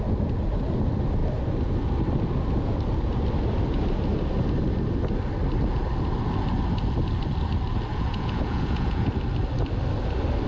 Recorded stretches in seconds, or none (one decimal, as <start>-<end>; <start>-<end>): 0.0-7.9; 9.1-10.5